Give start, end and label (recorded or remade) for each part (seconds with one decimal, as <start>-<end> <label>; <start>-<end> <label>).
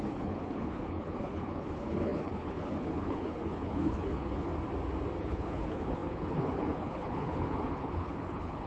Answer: 0.0-4.5 remade; 4.5-5.2 recorded; 5.2-8.7 remade